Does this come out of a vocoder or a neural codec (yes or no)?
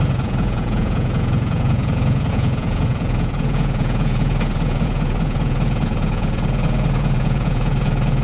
yes